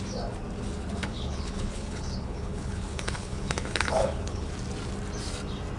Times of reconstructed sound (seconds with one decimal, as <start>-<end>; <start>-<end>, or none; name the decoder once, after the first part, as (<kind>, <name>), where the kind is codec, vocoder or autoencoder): 1.0-4.5 (codec, HILCodec)